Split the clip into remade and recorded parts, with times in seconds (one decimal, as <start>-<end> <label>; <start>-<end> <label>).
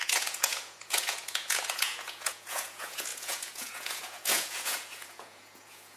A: 0.0-6.0 remade